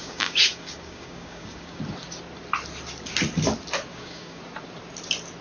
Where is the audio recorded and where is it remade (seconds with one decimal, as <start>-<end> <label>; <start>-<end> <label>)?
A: 0.0-1.8 remade; 1.8-3.9 recorded; 3.9-4.4 remade; 4.4-5.4 recorded